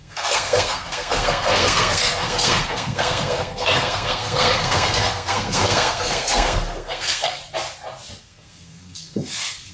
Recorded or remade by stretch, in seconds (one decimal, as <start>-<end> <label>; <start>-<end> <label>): 0.0-7.4 remade; 7.4-8.2 recorded; 8.2-9.7 remade